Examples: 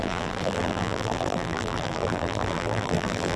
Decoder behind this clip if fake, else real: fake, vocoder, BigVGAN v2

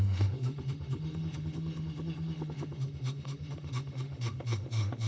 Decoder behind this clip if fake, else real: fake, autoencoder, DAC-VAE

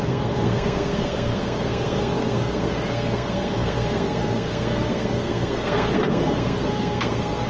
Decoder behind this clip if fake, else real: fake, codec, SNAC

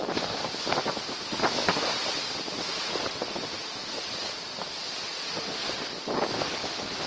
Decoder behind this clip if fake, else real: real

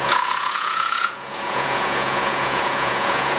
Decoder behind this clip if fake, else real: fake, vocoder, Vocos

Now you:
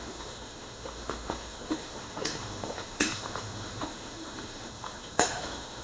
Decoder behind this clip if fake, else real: fake, autoencoder, DAC-VAE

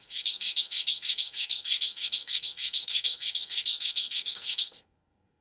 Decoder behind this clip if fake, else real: fake, codec, SNAC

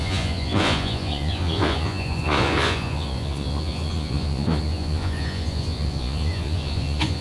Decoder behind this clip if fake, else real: fake, vocoder, Vocos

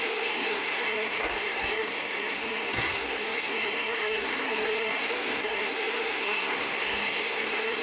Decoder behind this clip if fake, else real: fake, codec, SNAC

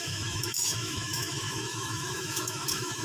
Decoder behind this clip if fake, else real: fake, autoencoder, DAC-VAE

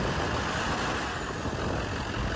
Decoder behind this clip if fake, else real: real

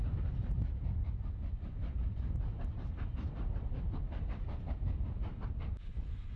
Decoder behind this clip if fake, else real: real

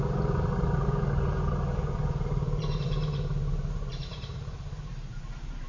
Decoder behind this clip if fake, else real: fake, vocoder, BigVGAN v2